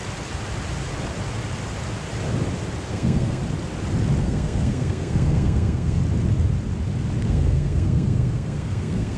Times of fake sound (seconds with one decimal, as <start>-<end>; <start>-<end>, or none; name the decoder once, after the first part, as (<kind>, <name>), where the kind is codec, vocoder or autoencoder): 2.9-3.4 (codec, SNAC); 4.2-6.0; 7.3-9.2